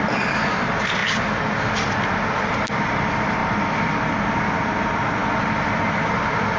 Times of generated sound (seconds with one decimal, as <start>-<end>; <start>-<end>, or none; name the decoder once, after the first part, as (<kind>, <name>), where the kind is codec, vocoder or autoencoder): none